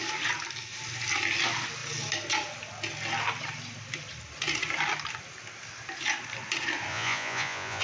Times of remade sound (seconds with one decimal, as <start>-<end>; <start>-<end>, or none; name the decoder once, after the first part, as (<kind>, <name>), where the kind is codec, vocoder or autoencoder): 6.9-7.8 (vocoder, Vocos)